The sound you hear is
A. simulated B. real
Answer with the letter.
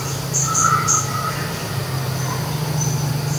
B